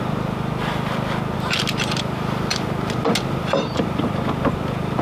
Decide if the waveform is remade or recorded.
recorded